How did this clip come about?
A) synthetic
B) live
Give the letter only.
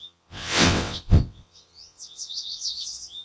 A